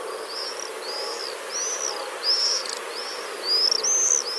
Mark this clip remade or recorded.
recorded